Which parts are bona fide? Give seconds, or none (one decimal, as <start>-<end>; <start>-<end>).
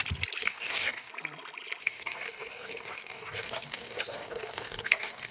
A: 0.0-0.4; 1.1-1.8